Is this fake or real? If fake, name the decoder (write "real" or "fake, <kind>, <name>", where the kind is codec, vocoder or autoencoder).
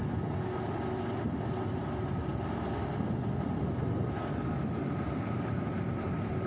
real